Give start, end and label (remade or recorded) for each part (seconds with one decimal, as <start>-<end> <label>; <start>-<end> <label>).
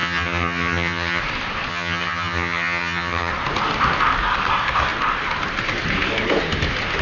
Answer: 0.0-1.2 remade; 1.2-1.7 recorded; 1.7-3.3 remade; 3.3-7.0 recorded